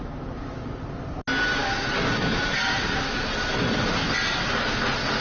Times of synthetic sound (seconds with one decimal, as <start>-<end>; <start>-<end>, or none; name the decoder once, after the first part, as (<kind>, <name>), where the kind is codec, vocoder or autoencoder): none